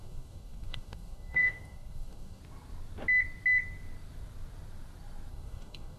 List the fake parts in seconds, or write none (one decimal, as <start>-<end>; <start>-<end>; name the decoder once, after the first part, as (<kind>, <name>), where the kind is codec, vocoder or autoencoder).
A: 0.0-2.4 (codec, DAC); 5.3-6.0